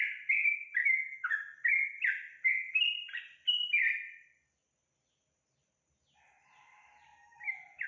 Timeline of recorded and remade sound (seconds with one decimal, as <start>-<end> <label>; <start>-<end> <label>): 0.0-7.9 recorded